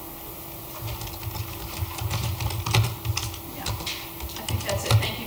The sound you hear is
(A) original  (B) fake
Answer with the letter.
A